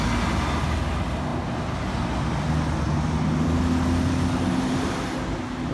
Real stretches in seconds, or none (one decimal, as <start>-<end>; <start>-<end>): 0.0-5.7